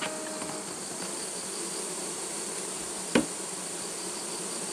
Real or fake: real